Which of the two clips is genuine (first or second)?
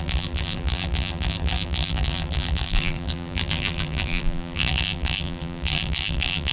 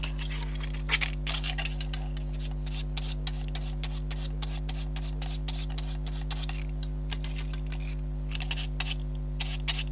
second